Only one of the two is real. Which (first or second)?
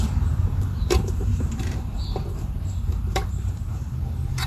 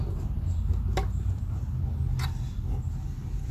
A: second